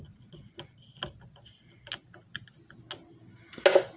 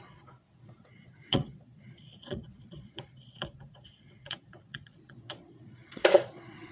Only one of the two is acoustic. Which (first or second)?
first